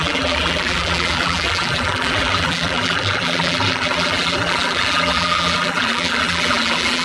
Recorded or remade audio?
remade